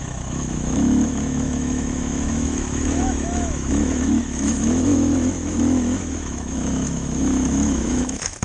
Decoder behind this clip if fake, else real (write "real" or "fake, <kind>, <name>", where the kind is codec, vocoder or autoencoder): fake, autoencoder, DAC-VAE